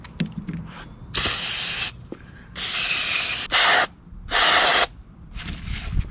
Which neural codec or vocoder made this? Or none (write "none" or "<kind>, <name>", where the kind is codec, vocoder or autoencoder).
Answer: none